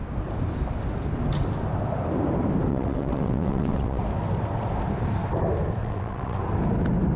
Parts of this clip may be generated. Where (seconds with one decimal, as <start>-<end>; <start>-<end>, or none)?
2.7-4.0; 5.8-6.4